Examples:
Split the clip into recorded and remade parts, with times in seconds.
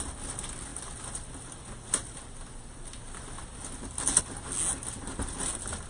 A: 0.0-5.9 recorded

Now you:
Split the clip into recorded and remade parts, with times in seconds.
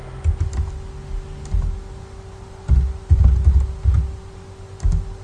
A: 0.0-5.2 recorded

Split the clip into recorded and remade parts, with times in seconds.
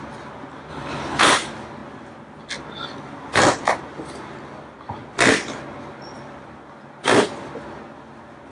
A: 0.0-0.7 recorded; 0.7-1.2 remade; 1.2-8.5 recorded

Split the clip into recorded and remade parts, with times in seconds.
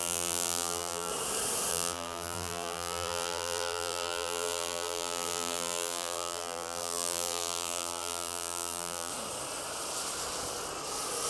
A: 0.0-1.1 remade; 1.1-1.7 recorded; 1.7-9.1 remade; 9.1-11.3 recorded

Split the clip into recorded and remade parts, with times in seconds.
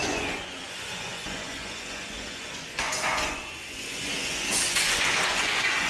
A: 0.0-5.9 remade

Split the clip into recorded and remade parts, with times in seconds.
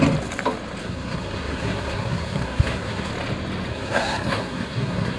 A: 0.0-0.8 recorded; 0.8-3.1 remade; 3.1-3.7 recorded; 3.7-5.2 remade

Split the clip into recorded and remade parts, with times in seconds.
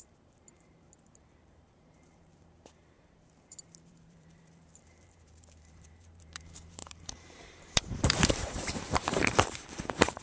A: 0.0-10.2 remade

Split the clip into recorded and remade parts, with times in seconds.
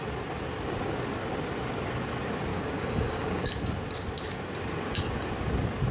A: 0.0-2.5 recorded; 2.5-3.5 remade; 3.5-5.9 recorded